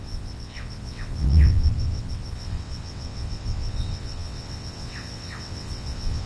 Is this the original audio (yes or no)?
no